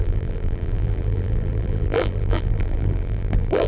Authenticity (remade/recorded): remade